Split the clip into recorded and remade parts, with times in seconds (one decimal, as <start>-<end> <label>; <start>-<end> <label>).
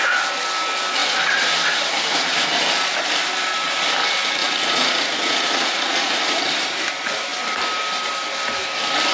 0.0-4.4 recorded; 4.4-6.2 remade; 6.2-9.1 recorded